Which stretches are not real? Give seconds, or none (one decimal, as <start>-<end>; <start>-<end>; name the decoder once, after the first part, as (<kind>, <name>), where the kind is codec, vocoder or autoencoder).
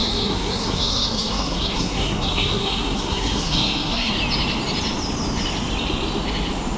0.0-4.1 (codec, SNAC)